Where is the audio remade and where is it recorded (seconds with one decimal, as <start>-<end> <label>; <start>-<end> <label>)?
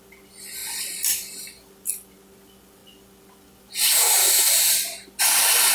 0.0-0.6 recorded; 0.6-1.4 remade; 1.4-5.7 recorded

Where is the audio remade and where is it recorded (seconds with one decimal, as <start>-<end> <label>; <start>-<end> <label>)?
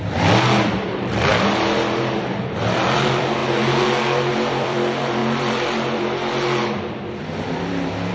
0.0-1.3 remade; 1.3-2.0 recorded; 2.0-3.4 remade; 3.4-4.3 recorded; 4.3-8.1 remade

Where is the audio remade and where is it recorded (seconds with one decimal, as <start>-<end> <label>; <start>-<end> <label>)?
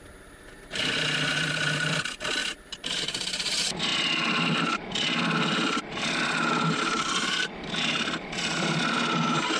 0.0-2.4 recorded; 2.4-3.0 remade; 3.0-3.9 recorded; 3.9-8.8 remade; 8.8-9.6 recorded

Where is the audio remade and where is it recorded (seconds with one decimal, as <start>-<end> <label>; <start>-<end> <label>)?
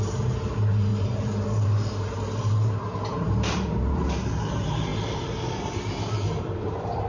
0.0-7.1 remade